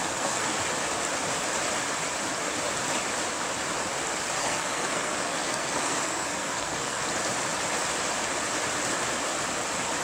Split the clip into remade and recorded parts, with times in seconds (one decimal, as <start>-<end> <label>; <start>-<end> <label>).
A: 0.0-0.6 remade; 0.6-4.4 recorded; 4.4-7.0 remade; 7.0-10.0 recorded